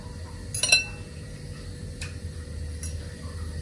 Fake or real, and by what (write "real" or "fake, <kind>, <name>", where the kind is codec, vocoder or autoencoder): real